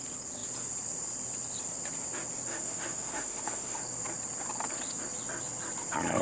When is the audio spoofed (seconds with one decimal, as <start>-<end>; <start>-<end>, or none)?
2.5-3.8